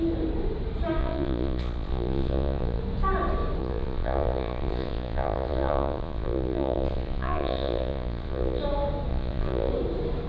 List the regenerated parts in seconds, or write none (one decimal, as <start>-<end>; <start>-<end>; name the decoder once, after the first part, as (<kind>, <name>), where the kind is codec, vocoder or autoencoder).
1.0-2.8 (vocoder, Vocos); 3.6-8.6; 9.1-9.7